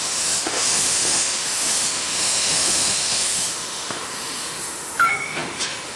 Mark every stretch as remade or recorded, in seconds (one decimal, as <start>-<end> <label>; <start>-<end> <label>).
0.0-6.0 remade